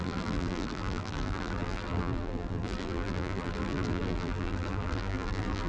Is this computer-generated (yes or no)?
yes